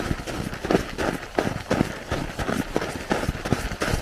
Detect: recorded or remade recorded